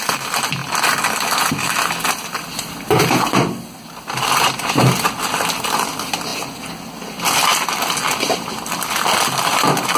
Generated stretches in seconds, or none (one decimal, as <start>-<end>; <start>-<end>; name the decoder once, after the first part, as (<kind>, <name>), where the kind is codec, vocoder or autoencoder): none